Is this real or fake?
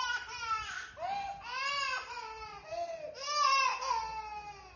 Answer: real